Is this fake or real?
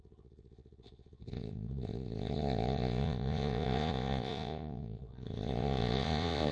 fake